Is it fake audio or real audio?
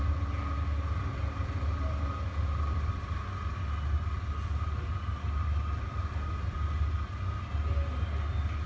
real